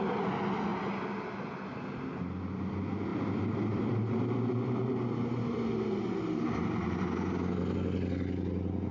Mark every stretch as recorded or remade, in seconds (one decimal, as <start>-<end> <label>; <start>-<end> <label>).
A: 0.0-8.9 recorded